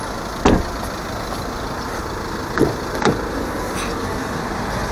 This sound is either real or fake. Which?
real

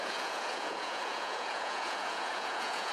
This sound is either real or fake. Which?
fake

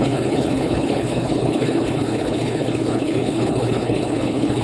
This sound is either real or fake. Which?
fake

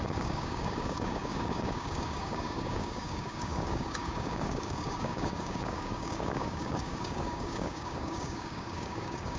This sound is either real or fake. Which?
fake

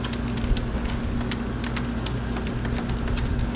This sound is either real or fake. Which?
real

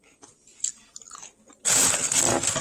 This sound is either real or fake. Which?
real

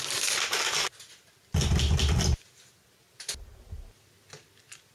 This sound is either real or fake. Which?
real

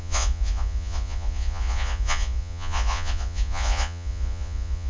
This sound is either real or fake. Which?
fake